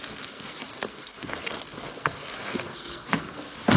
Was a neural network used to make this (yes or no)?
yes